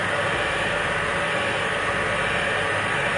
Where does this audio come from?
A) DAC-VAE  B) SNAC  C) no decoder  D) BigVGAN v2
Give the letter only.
C